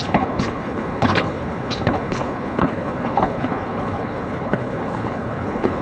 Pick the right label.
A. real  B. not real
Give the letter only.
B